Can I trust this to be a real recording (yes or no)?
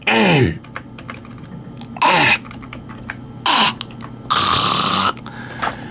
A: yes